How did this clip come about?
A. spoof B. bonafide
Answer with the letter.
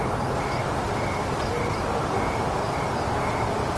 B